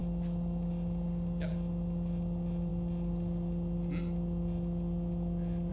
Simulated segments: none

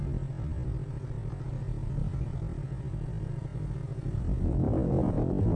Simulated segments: none

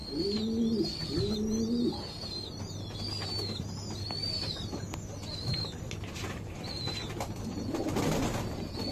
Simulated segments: none

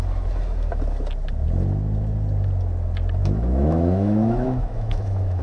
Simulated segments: 3.2-5.4 (autoencoder, DAC-VAE)

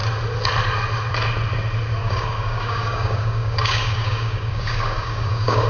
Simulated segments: 2.0-5.7 (codec, DAC)

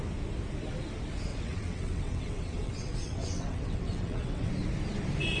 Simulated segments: 1.3-4.5 (vocoder, WaveNeXt)

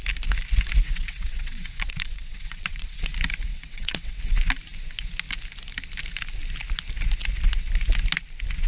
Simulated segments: 0.9-3.0 (vocoder, WaveNeXt); 3.5-4.2

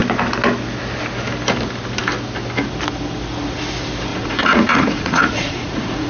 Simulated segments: 4.1-6.1 (vocoder, Vocos)